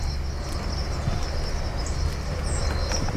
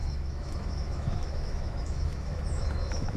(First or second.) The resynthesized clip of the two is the second